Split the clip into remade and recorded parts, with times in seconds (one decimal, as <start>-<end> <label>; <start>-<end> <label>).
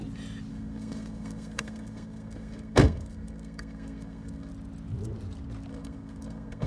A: 0.0-0.5 recorded; 0.5-4.5 remade; 4.5-5.7 recorded; 5.7-6.7 remade